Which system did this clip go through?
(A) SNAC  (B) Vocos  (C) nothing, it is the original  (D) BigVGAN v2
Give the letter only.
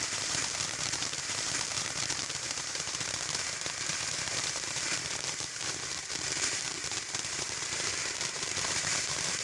D